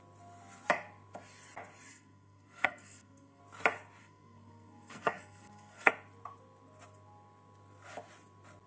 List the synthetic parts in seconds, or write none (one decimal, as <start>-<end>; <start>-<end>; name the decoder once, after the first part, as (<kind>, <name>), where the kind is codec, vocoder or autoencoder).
1.9-3.4 (codec, SNAC); 4.0-5.9